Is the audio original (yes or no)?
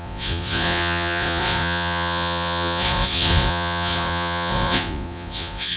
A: no